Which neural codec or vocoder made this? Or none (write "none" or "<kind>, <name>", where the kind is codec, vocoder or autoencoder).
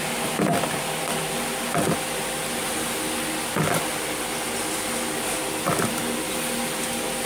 none